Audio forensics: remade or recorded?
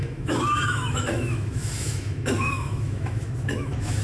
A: remade